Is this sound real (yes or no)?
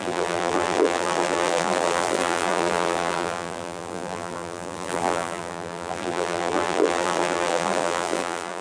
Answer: no